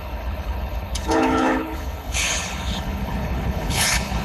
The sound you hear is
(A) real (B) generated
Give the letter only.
B